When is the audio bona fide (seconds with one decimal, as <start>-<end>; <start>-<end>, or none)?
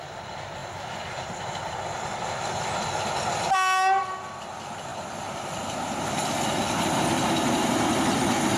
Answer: 0.0-8.6